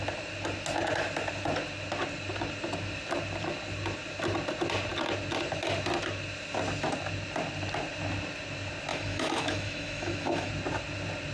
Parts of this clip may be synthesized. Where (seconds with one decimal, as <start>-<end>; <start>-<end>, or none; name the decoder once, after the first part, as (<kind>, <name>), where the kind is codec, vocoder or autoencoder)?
8.9-10.5 (autoencoder, DAC-VAE)